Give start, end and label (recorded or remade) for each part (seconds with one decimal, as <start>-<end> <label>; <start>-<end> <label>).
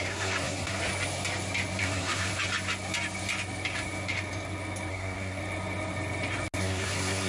0.0-0.8 remade; 0.8-1.8 recorded; 1.8-2.3 remade; 2.3-4.9 recorded; 4.9-5.4 remade; 5.4-6.6 recorded; 6.6-7.3 remade